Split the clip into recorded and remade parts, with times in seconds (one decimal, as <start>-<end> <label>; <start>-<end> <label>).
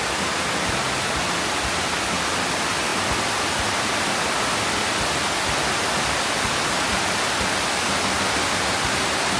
0.0-9.4 recorded